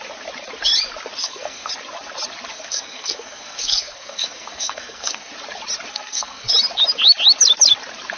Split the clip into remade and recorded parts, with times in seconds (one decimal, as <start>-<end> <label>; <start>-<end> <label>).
0.0-1.2 recorded; 1.2-1.7 remade; 1.7-2.5 recorded; 2.5-5.3 remade; 5.3-5.9 recorded; 5.9-6.5 remade; 6.5-8.2 recorded